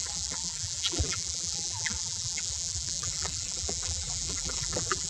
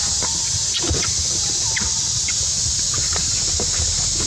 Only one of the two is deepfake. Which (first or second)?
first